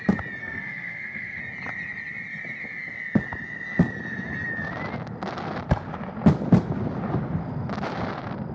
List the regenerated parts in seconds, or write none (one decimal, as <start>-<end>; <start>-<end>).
0.4-1.4